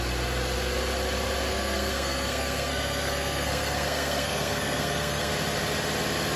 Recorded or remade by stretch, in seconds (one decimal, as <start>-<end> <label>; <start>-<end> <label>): 0.0-1.5 recorded; 1.5-5.3 remade; 5.3-6.4 recorded